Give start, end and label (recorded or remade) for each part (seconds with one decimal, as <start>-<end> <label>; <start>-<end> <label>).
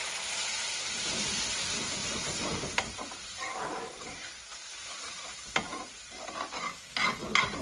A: 0.0-2.0 recorded; 2.0-6.0 remade; 6.0-7.6 recorded